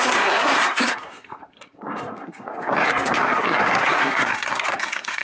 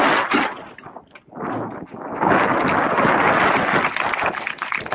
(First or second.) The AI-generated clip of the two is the first